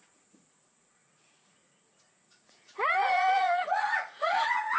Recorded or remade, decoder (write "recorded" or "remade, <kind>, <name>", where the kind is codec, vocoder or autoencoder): remade, vocoder, Vocos